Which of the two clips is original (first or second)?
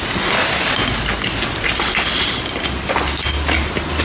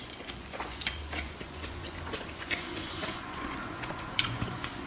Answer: first